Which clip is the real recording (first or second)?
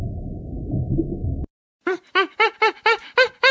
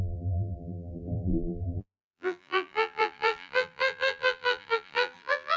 first